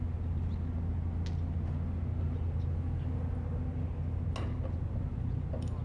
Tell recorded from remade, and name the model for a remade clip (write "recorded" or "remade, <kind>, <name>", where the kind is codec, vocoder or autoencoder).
recorded